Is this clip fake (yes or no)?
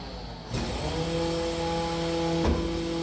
no